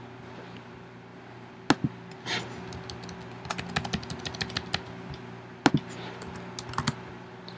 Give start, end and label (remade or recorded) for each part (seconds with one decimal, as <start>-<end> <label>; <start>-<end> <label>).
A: 0.0-7.6 recorded